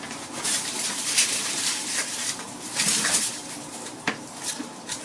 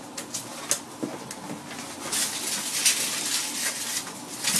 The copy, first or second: first